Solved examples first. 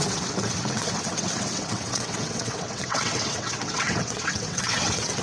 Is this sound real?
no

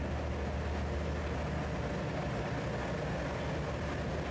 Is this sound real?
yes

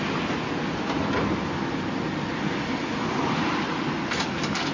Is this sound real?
yes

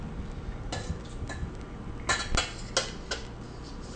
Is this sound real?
yes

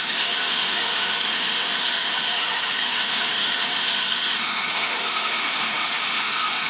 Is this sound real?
no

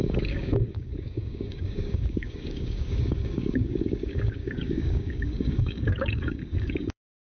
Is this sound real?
no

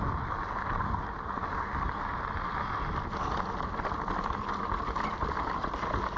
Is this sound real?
yes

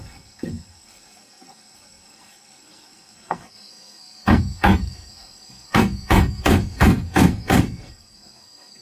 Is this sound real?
no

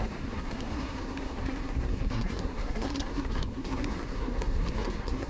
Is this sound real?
no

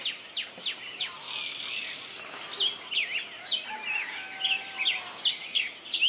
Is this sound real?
yes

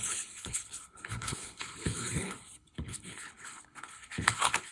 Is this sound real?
no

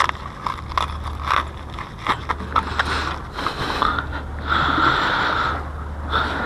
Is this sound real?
yes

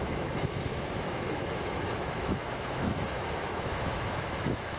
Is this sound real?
no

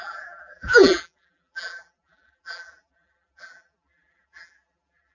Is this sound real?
no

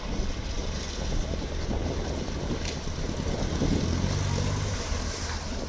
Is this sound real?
yes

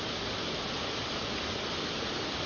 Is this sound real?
yes